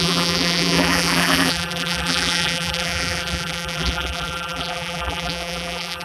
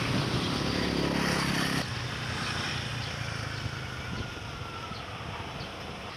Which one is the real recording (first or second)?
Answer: second